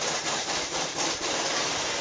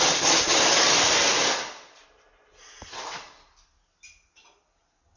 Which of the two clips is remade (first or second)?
first